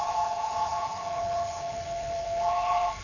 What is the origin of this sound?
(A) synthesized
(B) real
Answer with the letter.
A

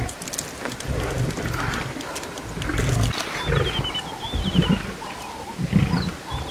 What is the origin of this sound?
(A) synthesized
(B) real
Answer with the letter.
B